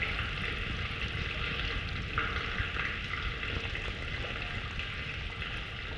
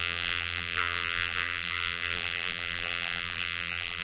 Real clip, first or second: first